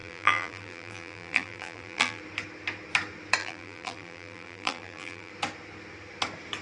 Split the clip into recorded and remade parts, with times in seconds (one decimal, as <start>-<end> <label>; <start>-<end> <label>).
0.0-2.2 remade; 2.2-3.4 recorded; 3.4-5.3 remade; 5.3-6.6 recorded